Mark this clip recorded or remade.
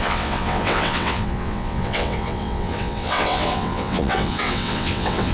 remade